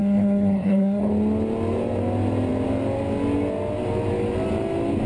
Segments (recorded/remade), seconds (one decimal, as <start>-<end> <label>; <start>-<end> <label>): 0.0-1.1 remade; 1.1-5.1 recorded